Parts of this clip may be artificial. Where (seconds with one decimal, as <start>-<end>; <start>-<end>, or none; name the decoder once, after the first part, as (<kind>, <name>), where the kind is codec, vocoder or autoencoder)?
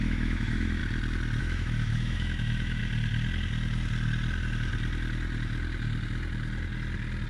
0.0-0.8 (autoencoder, DAC-VAE); 1.4-2.8